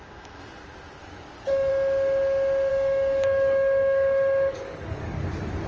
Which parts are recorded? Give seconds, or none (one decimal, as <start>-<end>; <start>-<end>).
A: 0.0-1.0; 1.7-2.7; 5.2-5.7